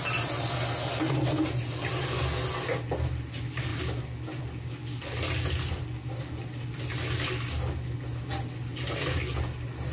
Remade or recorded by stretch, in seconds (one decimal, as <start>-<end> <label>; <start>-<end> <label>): 0.0-9.9 recorded